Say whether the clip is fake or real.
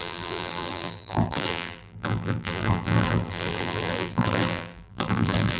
fake